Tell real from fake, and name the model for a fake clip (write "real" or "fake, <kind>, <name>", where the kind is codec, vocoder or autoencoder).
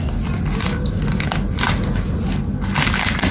real